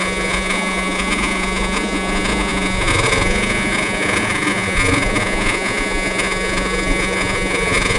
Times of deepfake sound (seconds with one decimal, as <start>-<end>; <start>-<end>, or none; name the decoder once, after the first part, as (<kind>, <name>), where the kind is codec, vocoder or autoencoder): 0.0-8.0 (vocoder, Vocos)